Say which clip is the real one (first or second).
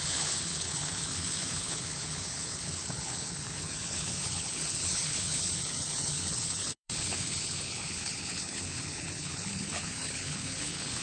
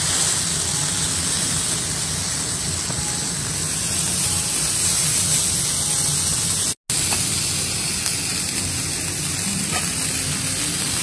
second